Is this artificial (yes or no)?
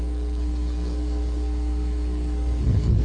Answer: yes